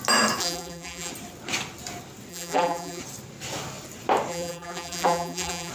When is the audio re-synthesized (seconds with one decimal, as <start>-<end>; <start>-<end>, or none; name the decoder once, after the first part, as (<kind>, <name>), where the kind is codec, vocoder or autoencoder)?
0.4-1.1 (vocoder, BigVGAN v2); 2.3-3.0; 4.3-5.7